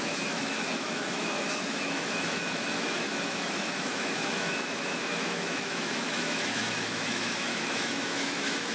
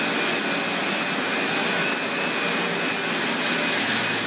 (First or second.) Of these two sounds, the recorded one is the second